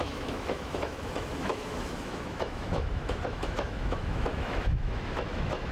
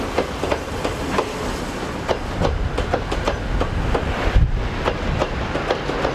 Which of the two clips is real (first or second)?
second